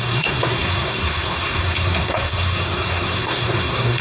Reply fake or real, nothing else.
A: fake